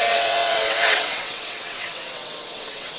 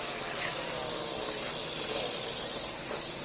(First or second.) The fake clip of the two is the first